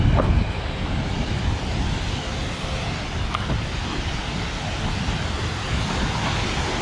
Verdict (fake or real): real